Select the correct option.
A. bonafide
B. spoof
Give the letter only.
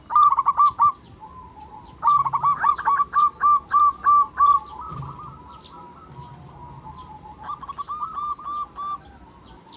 A